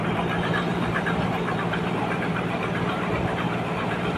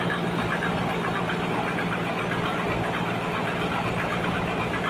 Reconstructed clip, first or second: first